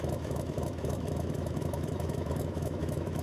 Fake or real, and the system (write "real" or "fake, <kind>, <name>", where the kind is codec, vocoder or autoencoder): fake, autoencoder, DAC-VAE